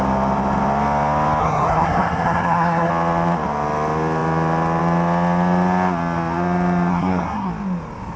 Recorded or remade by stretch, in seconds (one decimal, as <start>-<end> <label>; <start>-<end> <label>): 0.0-1.4 recorded; 1.4-2.9 remade; 2.9-6.9 recorded; 6.9-7.5 remade; 7.5-8.2 recorded